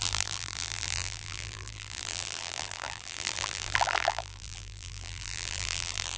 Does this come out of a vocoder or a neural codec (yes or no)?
yes